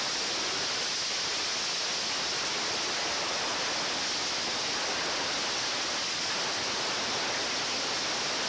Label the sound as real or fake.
real